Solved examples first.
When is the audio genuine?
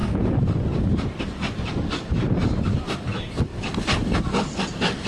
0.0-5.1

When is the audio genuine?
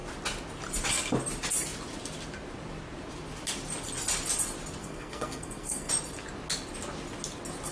0.0-4.8; 5.9-7.7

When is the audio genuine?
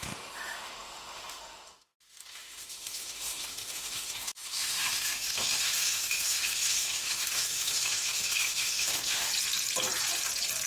9.3-10.7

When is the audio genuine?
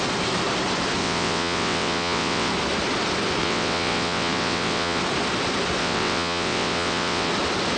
0.0-1.0; 2.5-3.4; 5.0-5.8; 7.3-7.8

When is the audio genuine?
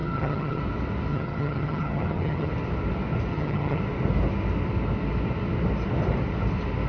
0.6-1.1; 2.5-3.3; 3.8-6.9